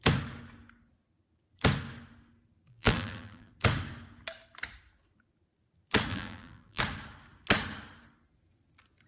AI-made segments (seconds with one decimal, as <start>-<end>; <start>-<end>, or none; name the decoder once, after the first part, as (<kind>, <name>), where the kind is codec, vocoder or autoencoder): 2.7-3.5 (vocoder, BigVGAN v2); 6.1-6.8